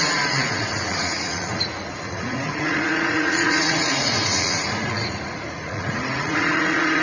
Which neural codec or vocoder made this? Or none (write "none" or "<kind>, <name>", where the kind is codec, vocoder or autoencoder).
vocoder, Vocos